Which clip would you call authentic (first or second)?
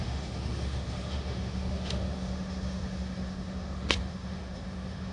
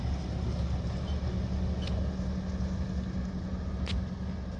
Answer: second